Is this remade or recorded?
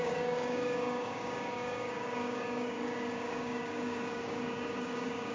remade